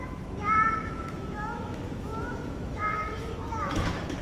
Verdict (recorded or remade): remade